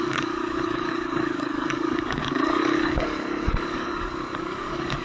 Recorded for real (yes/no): no